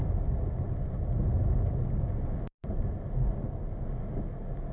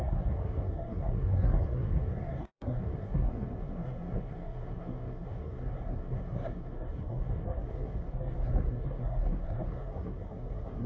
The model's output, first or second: second